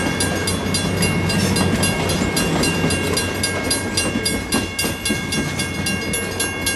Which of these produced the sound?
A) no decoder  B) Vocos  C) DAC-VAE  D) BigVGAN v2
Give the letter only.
A